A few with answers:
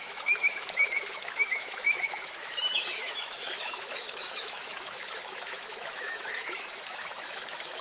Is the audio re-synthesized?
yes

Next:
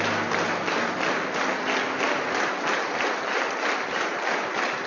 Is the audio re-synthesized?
no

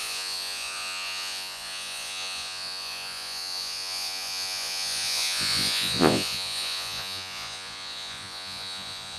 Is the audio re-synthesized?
yes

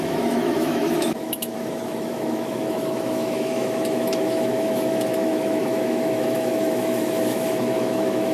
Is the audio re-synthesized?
yes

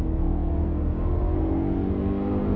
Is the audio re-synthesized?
yes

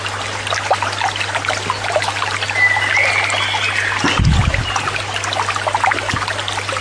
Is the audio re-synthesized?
no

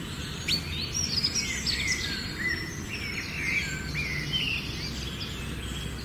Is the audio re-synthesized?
no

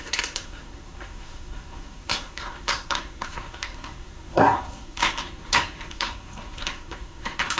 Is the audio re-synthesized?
yes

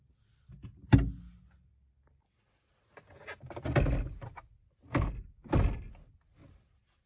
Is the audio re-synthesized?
no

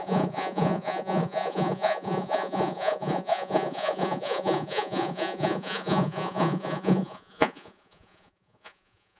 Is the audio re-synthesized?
yes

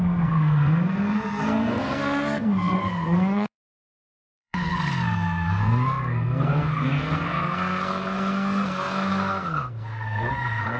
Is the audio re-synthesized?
yes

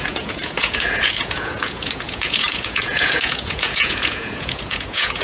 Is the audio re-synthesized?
yes